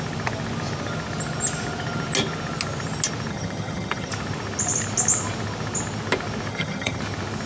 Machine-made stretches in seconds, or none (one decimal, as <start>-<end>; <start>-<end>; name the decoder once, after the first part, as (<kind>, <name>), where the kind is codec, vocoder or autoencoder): 3.3-4.1 (vocoder, HiFi-GAN); 6.5-7.0